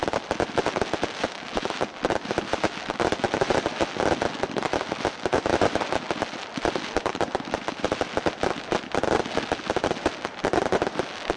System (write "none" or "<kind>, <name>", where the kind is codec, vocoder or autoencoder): none